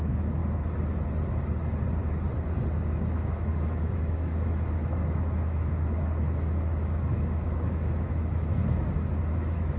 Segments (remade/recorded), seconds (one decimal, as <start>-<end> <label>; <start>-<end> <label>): 0.0-0.4 remade; 0.4-2.9 recorded; 2.9-8.6 remade; 8.6-9.3 recorded; 9.3-9.8 remade